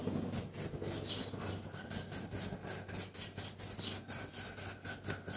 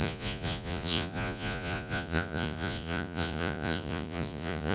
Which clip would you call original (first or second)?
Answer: first